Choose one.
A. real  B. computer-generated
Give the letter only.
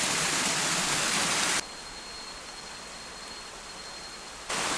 A